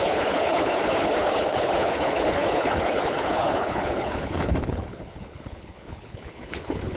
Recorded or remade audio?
remade